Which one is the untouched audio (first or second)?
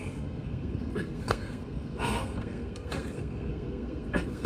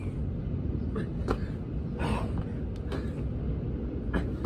second